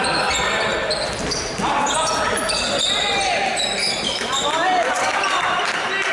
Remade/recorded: recorded